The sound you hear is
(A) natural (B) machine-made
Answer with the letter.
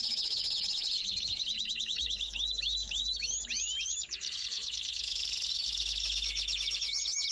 B